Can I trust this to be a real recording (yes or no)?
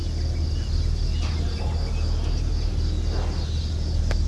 yes